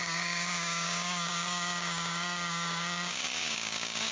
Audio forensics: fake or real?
fake